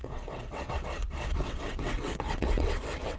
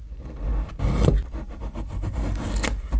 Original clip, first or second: second